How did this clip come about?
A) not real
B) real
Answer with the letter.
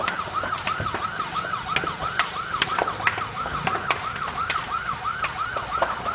B